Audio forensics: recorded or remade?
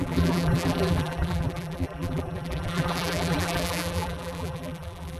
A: remade